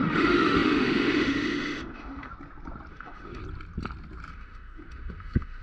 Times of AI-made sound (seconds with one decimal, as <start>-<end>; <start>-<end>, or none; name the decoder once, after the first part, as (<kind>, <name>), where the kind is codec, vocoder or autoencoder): 0.0-2.3 (autoencoder, DAC-VAE); 2.9-3.4; 4.3-5.6